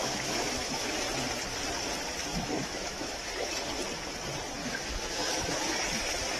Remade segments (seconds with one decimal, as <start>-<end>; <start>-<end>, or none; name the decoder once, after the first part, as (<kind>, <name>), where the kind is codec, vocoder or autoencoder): 0.0-1.0 (autoencoder, DAC-VAE); 2.3-3.5; 4.6-5.8